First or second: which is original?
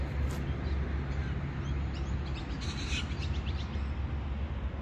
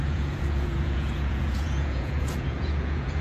first